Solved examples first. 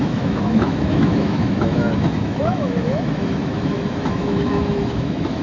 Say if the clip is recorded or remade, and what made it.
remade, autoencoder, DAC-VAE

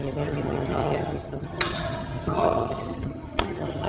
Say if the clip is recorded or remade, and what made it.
remade, vocoder, HiFi-GAN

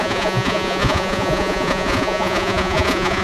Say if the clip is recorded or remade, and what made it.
remade, vocoder, Vocos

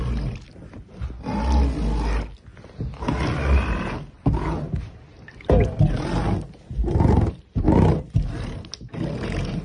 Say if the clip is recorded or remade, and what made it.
recorded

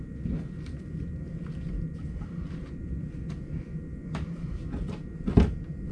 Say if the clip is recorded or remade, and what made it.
recorded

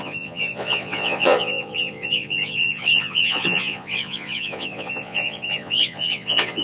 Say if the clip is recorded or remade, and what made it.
remade, vocoder, Vocos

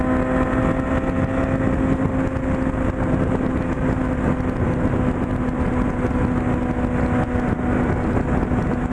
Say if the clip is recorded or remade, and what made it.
recorded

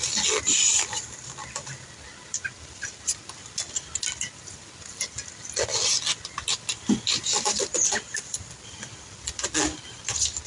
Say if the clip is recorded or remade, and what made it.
recorded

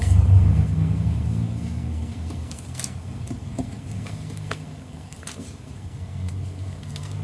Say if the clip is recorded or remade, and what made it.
remade, codec, SNAC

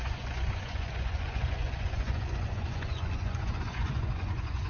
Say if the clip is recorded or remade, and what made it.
remade, vocoder, Vocos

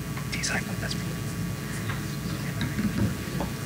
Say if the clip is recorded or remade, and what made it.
recorded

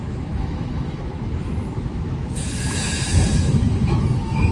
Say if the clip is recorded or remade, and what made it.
remade, autoencoder, DAC-VAE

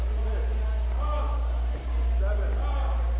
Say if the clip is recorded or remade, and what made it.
recorded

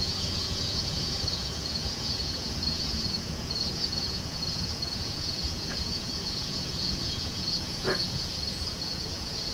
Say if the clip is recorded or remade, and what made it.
remade, vocoder, Vocos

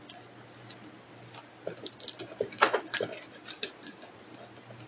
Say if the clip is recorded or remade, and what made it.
recorded